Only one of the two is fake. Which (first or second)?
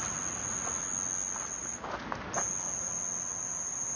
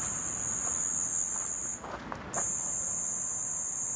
second